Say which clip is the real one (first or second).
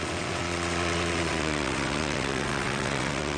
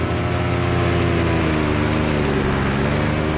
second